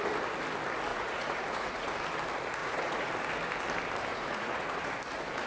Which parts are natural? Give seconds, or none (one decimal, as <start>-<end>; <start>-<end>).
0.0-0.9; 1.9-2.6; 3.1-4.1; 4.9-5.5